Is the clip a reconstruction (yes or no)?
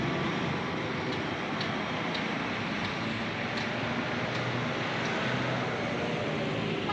no